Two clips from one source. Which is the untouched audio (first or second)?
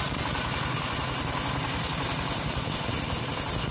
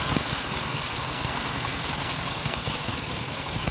first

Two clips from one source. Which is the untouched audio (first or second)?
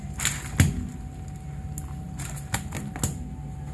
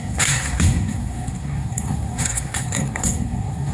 first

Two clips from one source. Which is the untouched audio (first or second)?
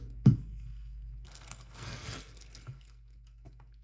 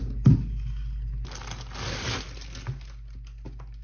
second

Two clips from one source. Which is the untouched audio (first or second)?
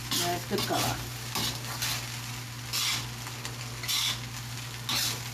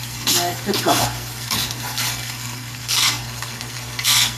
first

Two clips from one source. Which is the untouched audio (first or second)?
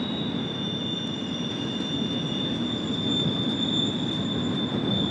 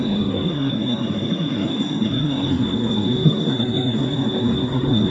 first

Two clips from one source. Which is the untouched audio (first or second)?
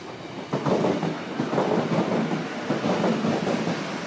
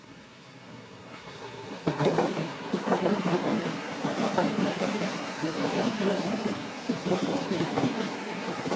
first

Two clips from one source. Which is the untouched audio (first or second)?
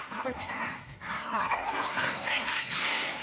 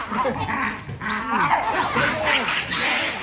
second